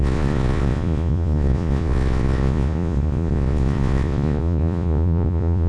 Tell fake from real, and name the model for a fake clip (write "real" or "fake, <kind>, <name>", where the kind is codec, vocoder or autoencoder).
fake, vocoder, Vocos